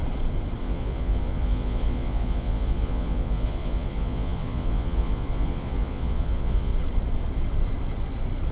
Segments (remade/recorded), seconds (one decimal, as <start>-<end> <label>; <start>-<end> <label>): 0.0-0.6 recorded; 0.6-6.7 remade; 6.7-8.5 recorded